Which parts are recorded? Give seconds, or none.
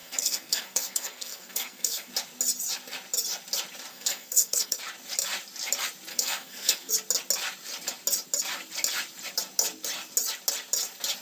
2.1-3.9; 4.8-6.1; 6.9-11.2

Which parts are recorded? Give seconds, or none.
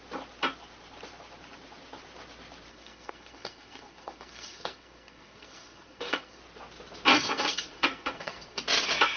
0.0-2.7; 6.4-7.1; 8.6-9.2